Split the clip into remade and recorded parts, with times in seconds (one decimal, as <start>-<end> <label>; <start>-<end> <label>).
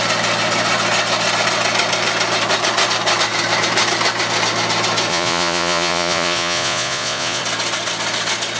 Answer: 0.0-5.1 recorded; 5.1-7.4 remade; 7.4-8.6 recorded